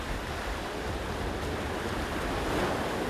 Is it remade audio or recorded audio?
recorded